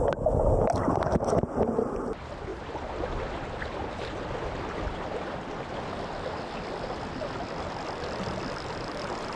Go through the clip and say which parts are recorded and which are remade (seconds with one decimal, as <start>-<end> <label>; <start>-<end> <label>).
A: 0.0-9.4 recorded